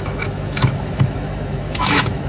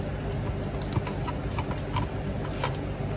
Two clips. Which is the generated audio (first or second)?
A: first